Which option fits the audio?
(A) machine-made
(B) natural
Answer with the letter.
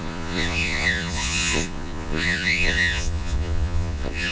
A